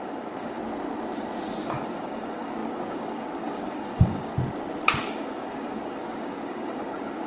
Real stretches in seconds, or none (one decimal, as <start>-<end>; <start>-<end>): 0.6-1.6; 4.3-5.0